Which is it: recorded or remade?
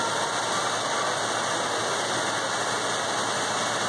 recorded